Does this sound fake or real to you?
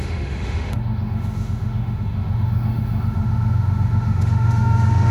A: fake